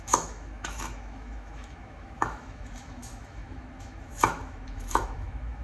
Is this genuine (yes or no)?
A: no